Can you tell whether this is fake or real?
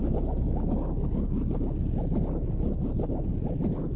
real